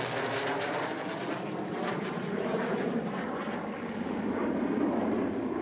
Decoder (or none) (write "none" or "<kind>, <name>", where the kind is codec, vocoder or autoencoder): none